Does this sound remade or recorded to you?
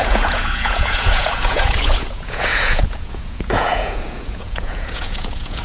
remade